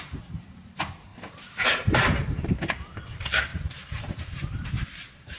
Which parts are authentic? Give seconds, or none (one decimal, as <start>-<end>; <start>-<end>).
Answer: none

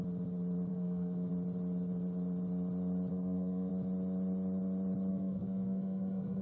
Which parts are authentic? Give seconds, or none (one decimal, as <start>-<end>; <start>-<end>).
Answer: 0.0-0.7; 1.3-3.1; 3.7-5.1

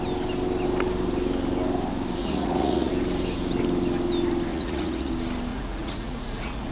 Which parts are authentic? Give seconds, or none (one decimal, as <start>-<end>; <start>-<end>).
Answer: 0.0-2.2; 2.9-4.5; 5.1-5.5

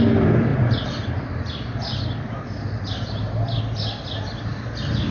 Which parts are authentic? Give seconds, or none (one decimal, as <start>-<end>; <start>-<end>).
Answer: 0.0-5.1